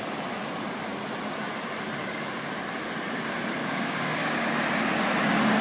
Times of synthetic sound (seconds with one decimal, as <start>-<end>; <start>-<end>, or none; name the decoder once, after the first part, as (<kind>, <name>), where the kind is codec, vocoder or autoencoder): 3.6-4.5 (codec, DAC)